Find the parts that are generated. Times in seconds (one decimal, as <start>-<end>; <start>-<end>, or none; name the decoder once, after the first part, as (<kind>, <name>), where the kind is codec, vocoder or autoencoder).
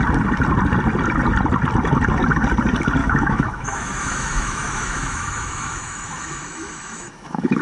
3.0-7.6 (autoencoder, DAC-VAE)